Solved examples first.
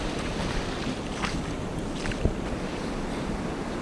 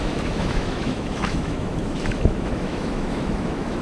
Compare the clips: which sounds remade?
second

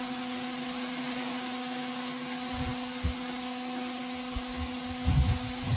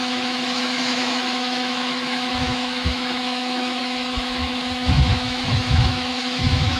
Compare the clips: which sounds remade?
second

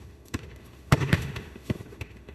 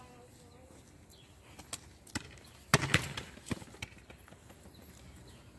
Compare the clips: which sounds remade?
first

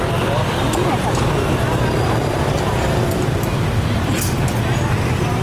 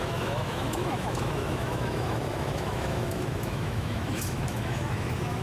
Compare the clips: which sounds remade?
second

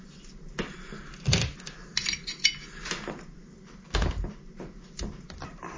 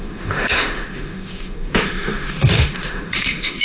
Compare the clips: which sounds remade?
second